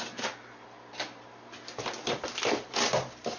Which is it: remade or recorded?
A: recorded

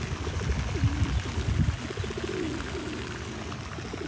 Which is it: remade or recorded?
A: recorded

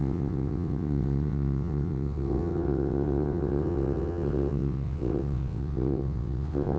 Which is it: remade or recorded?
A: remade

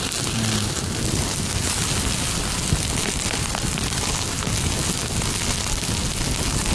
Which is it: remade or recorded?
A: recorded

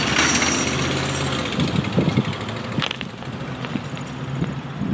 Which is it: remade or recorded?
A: recorded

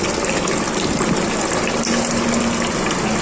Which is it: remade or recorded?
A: recorded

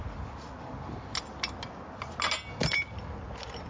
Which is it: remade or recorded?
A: recorded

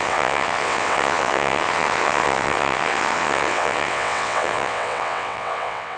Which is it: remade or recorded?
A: remade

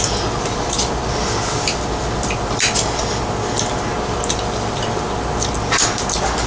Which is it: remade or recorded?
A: recorded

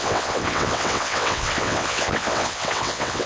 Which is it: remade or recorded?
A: remade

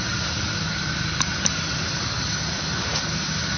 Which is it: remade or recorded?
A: recorded